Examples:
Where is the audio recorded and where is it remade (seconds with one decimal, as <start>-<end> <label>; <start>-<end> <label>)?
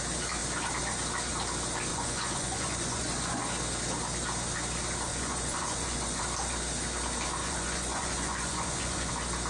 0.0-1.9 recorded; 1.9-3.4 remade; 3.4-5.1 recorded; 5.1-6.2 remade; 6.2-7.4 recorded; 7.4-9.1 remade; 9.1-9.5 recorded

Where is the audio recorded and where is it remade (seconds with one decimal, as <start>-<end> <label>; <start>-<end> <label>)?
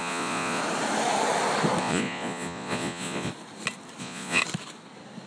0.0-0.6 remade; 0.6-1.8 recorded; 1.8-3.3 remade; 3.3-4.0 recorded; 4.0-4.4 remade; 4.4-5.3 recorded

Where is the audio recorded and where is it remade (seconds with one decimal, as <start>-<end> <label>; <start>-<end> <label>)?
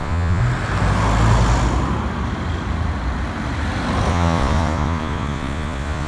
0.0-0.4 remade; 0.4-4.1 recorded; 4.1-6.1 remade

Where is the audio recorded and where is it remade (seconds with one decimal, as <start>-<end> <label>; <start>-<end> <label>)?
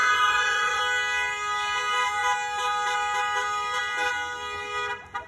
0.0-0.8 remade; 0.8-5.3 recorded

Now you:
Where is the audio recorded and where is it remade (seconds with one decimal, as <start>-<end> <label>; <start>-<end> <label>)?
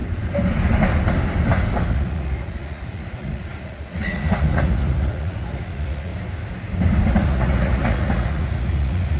0.0-1.9 recorded; 1.9-6.1 remade; 6.1-7.1 recorded; 7.1-9.2 remade